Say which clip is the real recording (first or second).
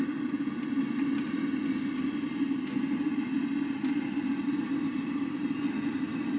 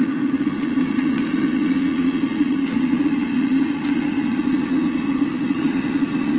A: first